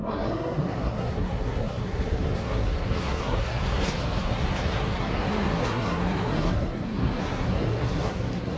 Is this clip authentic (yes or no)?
no